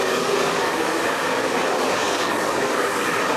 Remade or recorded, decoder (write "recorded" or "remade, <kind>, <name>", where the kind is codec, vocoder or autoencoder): remade, codec, DAC